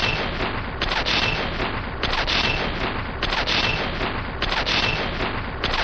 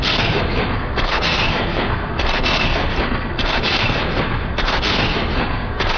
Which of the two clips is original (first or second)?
first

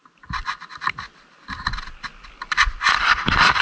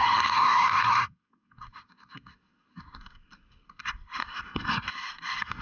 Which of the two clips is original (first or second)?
first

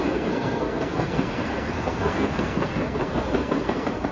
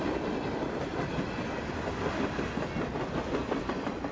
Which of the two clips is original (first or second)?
second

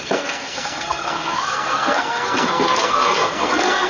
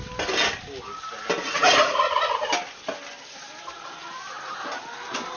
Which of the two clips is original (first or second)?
second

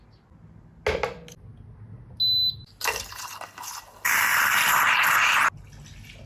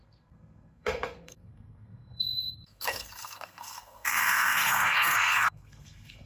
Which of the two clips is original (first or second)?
first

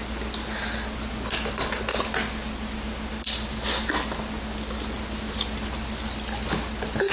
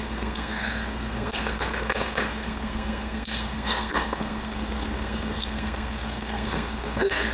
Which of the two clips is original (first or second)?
first